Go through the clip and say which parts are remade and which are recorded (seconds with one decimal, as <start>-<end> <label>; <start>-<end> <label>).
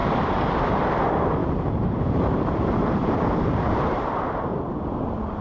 0.0-0.9 remade; 0.9-1.4 recorded; 1.4-4.6 remade; 4.6-5.4 recorded